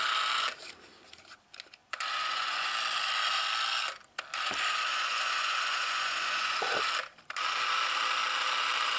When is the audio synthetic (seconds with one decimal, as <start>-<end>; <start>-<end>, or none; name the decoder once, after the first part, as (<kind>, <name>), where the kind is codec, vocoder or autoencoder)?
1.8-2.7 (vocoder, Vocos); 4.9-6.7